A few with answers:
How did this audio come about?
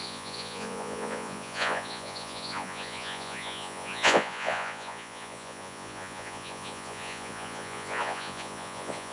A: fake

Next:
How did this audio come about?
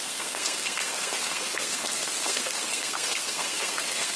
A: fake